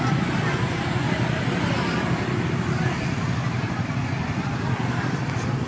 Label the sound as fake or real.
fake